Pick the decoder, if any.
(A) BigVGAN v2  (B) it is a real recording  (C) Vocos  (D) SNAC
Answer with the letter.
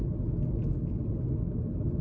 B